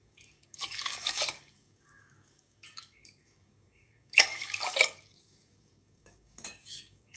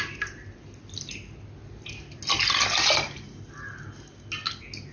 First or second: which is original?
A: second